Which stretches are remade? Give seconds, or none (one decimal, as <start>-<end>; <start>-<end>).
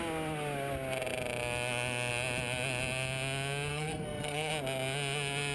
3.7-4.5